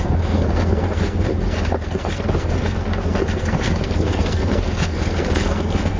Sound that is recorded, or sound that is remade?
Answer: remade